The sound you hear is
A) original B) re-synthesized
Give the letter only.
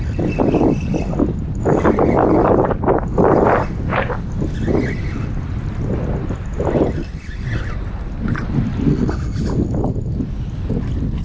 A